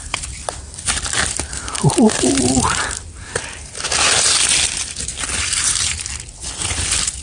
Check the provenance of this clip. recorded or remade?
remade